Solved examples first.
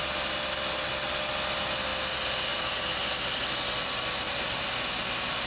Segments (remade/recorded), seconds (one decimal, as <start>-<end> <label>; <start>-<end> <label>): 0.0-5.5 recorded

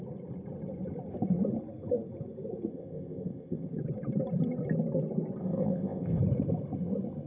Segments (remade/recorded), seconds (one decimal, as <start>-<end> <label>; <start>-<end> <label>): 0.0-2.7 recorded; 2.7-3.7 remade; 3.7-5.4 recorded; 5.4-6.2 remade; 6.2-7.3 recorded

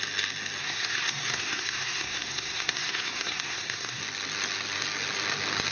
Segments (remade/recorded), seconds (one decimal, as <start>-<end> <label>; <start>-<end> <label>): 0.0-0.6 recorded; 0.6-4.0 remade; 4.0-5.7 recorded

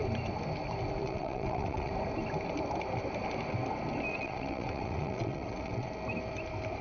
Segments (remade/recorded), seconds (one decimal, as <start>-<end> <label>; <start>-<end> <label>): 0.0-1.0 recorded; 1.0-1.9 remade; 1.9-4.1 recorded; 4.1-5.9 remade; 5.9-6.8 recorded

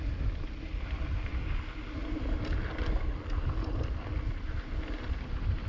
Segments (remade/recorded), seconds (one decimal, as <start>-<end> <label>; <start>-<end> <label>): 0.0-5.7 recorded

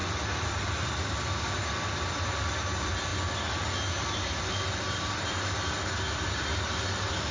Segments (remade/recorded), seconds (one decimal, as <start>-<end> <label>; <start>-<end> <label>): 0.0-7.3 recorded